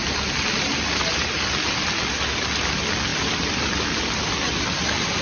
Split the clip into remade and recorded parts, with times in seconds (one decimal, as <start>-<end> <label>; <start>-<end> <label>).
0.0-5.2 recorded